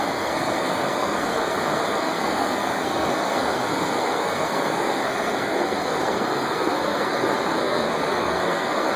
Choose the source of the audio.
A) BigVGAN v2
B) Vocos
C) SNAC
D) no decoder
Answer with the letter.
C